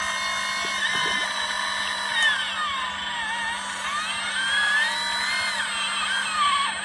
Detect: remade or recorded recorded